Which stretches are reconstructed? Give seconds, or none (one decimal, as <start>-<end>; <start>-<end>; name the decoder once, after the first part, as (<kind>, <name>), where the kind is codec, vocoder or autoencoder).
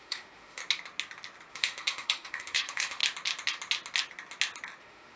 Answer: 0.0-0.6 (autoencoder, DAC-VAE); 1.5-3.0; 4.8-5.2